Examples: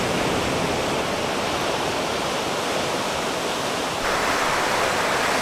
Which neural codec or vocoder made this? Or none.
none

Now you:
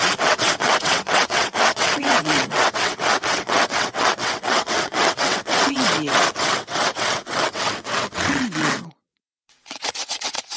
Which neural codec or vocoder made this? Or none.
vocoder, WaveNeXt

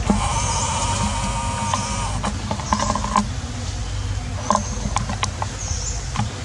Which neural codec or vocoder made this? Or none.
none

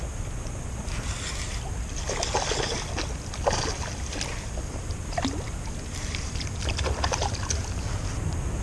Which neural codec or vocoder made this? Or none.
none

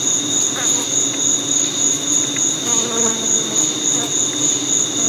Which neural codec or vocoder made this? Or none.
none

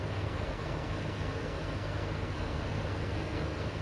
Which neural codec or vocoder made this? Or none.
codec, SNAC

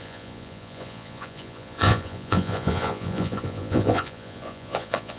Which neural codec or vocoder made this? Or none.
vocoder, Vocos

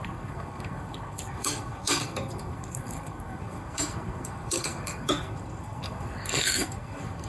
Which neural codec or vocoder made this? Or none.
codec, SNAC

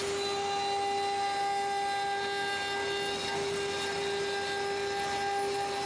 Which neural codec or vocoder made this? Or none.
none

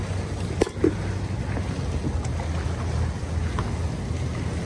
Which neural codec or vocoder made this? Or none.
none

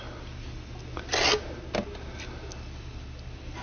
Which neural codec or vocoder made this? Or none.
none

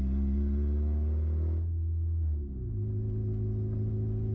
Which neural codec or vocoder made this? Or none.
none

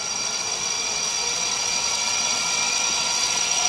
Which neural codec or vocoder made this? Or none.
vocoder, WaveNeXt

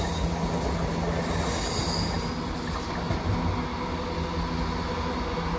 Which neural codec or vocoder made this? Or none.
none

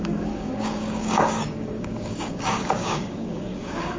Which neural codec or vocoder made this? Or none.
codec, DAC